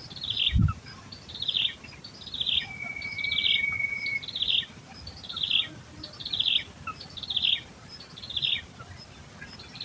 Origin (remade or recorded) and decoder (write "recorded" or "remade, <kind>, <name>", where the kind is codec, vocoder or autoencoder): recorded